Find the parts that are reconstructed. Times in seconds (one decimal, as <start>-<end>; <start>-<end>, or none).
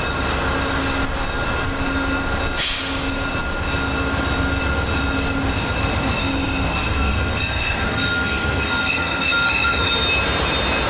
6.2-9.9